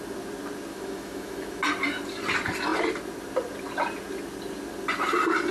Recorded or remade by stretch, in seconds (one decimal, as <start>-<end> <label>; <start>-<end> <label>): 0.0-0.7 recorded; 0.7-1.6 remade; 1.6-5.5 recorded